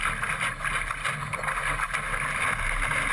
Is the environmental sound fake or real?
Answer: real